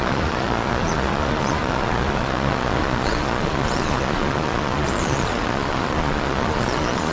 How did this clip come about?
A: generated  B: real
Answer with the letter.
A